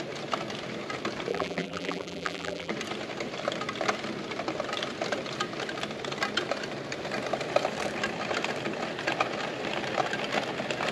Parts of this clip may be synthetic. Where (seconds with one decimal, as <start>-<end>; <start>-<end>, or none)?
1.3-2.7